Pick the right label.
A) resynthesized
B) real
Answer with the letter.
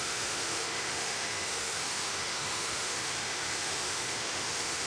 A